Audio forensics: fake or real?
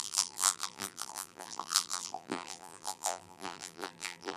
fake